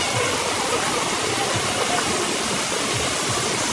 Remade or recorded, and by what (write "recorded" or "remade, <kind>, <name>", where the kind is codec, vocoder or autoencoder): recorded